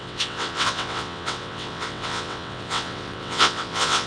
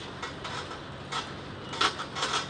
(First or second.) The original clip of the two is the second